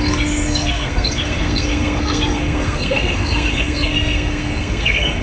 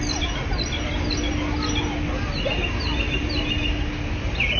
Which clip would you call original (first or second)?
second